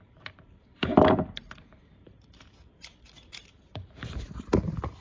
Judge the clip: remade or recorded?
remade